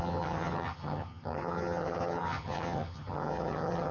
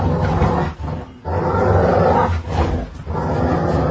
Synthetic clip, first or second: first